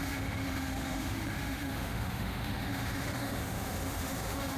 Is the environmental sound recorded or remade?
remade